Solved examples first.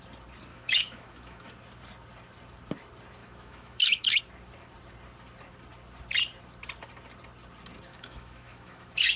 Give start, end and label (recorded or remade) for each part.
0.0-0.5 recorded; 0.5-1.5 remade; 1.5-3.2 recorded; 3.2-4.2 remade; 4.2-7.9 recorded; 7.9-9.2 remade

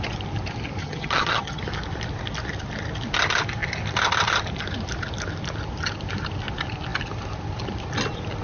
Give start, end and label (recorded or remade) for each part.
0.0-0.8 recorded; 0.8-1.6 remade; 1.6-8.4 recorded

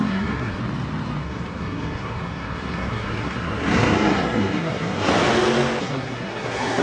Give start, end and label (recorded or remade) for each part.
0.0-0.6 remade; 0.6-1.2 recorded; 1.2-5.1 remade; 5.1-5.8 recorded; 5.8-6.8 remade

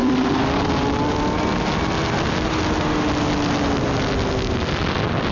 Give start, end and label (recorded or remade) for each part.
0.0-5.3 recorded